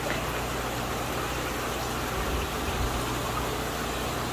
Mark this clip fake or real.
real